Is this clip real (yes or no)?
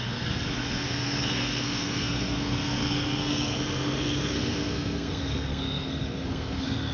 no